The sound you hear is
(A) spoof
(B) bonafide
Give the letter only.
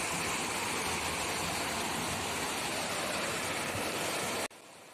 B